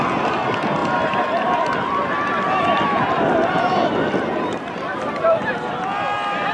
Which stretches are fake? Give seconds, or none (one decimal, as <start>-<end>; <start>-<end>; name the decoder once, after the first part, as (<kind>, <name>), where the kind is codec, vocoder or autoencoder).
none